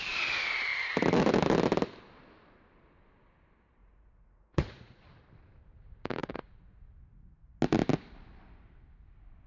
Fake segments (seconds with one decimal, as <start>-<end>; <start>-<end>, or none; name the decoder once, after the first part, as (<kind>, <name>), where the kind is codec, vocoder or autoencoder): 3.8-5.0 (vocoder, Vocos); 6.2-6.8